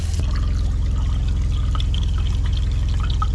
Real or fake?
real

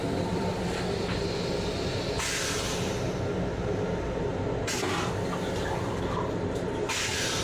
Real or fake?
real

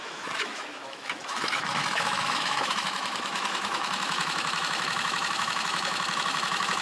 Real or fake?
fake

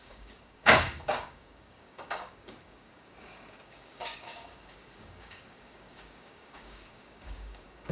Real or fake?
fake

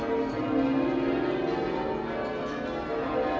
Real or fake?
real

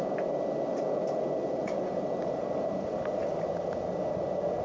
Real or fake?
real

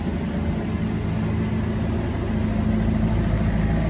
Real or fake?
real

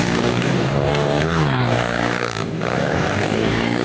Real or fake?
fake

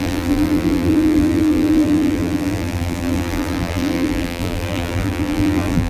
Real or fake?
fake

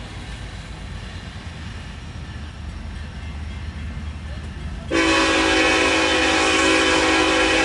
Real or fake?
real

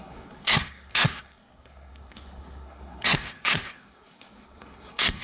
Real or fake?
fake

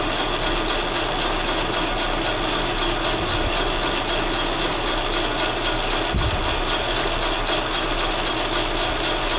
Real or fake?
real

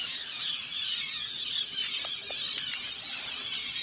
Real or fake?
real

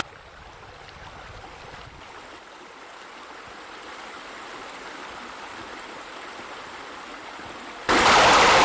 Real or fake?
real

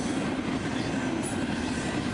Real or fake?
real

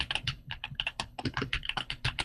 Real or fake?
fake